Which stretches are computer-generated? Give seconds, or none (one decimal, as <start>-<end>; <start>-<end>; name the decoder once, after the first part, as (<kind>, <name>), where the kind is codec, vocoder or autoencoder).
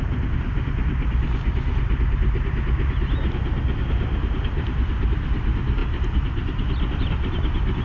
none